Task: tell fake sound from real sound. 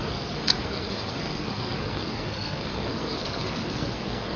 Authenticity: fake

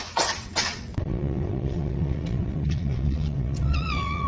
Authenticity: fake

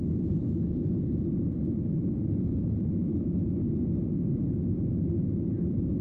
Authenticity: real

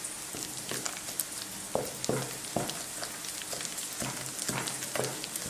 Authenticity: real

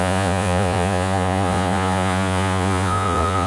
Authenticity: fake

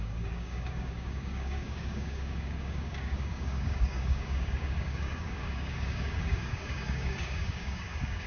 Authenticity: fake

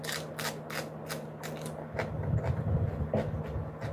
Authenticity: real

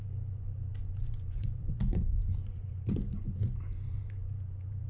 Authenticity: fake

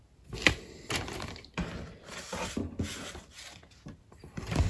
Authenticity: real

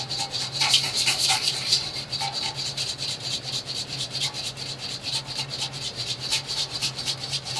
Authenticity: fake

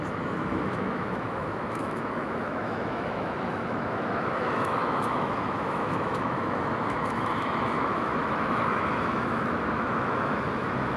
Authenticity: fake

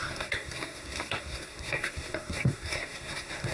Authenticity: fake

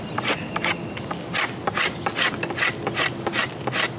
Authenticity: real